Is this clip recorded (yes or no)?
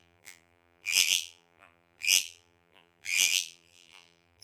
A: no